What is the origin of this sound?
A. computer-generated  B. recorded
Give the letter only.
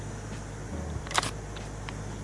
B